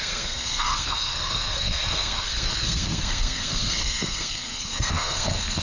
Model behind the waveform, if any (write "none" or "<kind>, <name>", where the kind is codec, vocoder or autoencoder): codec, SNAC